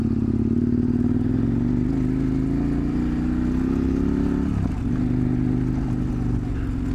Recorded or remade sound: recorded